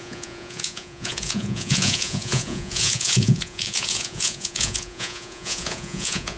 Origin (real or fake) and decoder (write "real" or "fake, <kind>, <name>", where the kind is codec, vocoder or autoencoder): fake, vocoder, Vocos